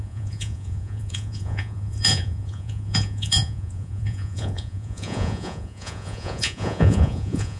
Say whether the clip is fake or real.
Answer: fake